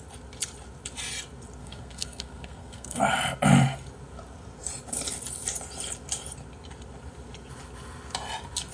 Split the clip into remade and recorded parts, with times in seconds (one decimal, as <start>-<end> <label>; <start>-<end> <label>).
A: 0.0-1.6 recorded; 1.6-3.0 remade; 3.0-8.7 recorded